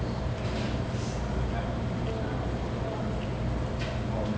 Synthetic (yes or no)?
no